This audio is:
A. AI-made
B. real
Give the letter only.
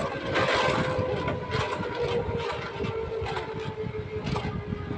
B